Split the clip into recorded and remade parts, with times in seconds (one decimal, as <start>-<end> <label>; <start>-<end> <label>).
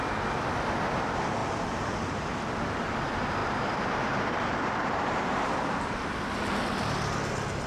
0.0-1.4 recorded; 1.4-2.9 remade; 2.9-3.4 recorded; 3.4-6.0 remade; 6.0-7.7 recorded